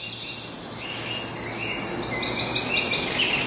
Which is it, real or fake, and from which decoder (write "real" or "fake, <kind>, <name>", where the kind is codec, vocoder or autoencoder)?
real